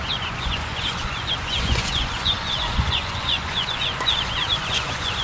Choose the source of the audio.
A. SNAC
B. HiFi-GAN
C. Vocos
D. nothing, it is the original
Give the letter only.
C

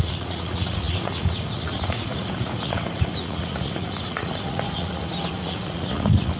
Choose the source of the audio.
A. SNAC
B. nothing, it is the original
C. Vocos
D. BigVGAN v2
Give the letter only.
C